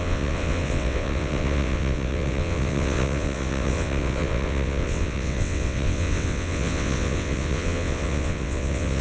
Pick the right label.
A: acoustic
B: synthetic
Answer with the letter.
B